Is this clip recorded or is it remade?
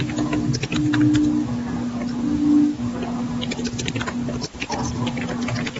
recorded